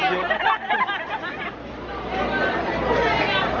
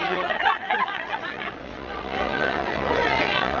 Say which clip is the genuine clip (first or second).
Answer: first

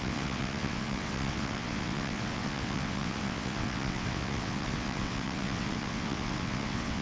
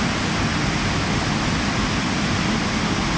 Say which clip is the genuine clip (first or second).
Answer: second